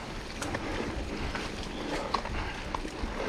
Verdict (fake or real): real